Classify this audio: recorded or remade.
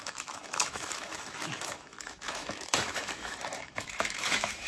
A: remade